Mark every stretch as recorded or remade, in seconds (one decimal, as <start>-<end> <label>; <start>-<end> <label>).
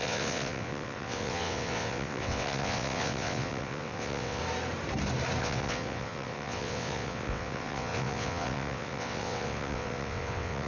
0.0-4.4 remade; 4.4-5.4 recorded; 5.4-10.7 remade